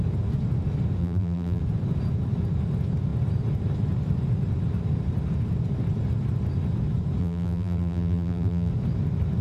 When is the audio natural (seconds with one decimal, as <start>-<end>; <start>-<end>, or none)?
0.0-1.0; 1.6-7.2; 8.7-9.4